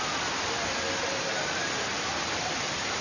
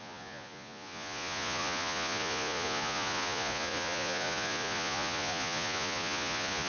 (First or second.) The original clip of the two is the first